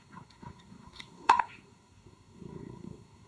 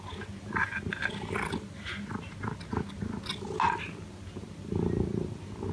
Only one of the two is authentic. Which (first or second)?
second